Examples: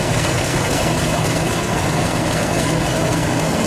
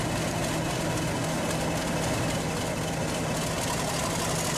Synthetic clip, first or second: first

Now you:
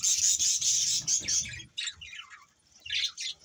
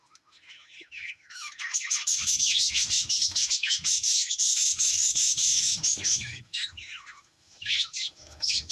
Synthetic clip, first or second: second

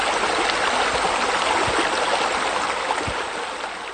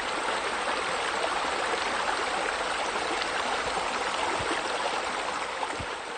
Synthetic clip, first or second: second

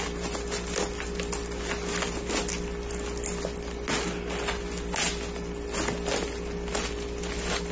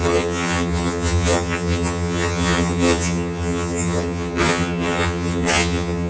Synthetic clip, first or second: second